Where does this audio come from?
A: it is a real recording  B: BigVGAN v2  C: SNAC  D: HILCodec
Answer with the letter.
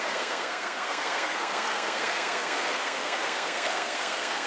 C